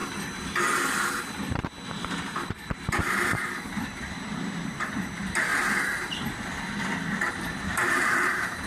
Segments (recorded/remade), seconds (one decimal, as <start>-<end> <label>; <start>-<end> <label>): 0.0-2.2 recorded; 2.2-5.5 remade; 5.5-7.3 recorded; 7.3-8.7 remade